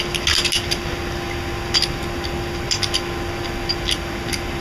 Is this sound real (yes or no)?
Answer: yes